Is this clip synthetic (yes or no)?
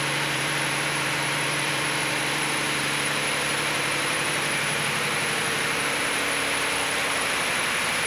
yes